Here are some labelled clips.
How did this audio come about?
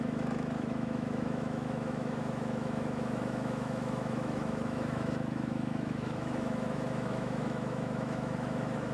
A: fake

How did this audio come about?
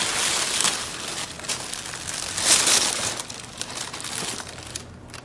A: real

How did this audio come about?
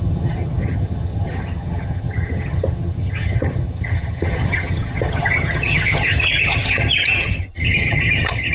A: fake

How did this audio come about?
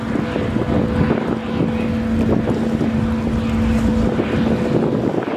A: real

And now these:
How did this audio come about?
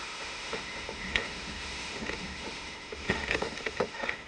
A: fake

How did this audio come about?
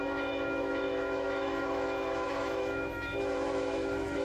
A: fake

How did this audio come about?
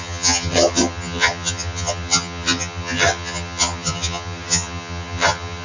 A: fake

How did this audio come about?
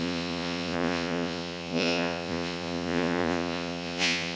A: fake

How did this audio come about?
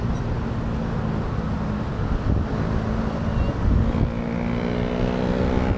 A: real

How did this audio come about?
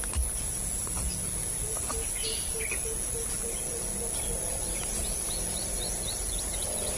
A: real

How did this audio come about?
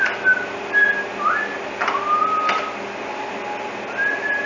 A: real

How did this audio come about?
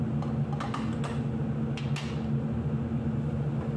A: real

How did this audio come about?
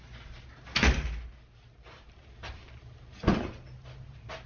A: real